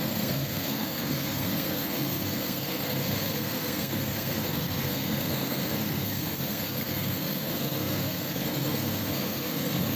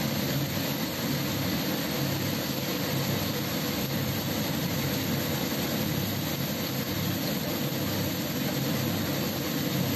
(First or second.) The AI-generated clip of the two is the first